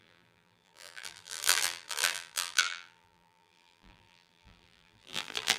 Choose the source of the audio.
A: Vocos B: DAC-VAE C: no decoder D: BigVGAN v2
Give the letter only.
D